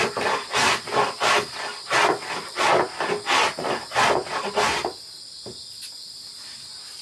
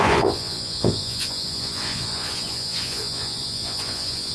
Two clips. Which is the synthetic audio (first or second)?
second